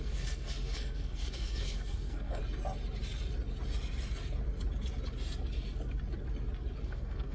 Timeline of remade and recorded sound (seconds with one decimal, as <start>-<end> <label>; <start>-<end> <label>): 0.0-2.4 remade; 2.4-6.8 recorded; 6.8-7.3 remade